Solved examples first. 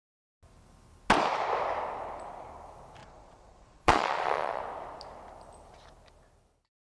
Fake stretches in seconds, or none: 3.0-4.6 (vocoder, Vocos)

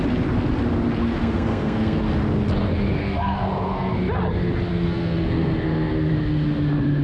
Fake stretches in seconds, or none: 1.2-2.0 (codec, SNAC); 3.0-3.9; 4.7-6.1

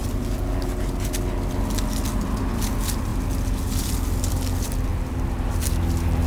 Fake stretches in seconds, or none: none

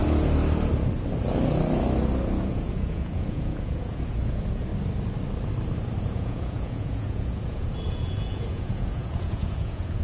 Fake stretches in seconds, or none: 2.5-4.7 (vocoder, Vocos); 6.0-10.0

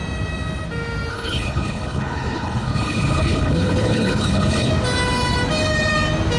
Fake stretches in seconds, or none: 1.1-4.7 (codec, HILCodec)

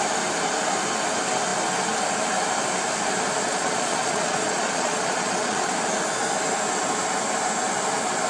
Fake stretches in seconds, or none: 3.4-5.7 (vocoder, Vocos)

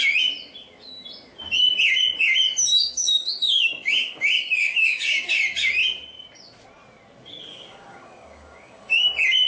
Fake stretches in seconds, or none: 2.7-5.3 (codec, DAC); 7.5-9.1

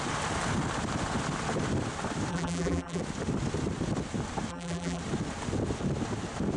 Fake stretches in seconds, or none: 2.3-3.0 (vocoder, BigVGAN v2); 4.5-5.0